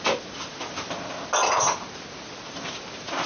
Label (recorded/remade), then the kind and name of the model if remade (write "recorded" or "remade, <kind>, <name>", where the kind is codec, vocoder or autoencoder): recorded